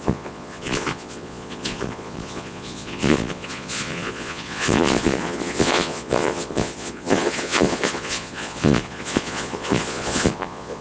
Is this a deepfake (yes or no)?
yes